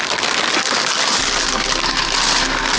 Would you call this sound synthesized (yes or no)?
no